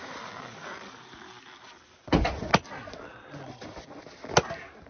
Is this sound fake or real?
real